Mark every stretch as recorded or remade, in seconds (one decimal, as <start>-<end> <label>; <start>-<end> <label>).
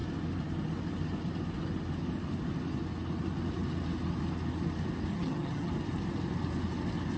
0.0-5.1 recorded; 5.1-5.7 remade; 5.7-7.2 recorded